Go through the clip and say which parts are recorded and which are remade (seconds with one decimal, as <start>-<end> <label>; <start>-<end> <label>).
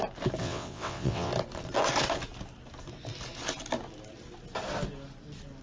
0.0-0.4 recorded; 0.4-1.3 remade; 1.3-5.6 recorded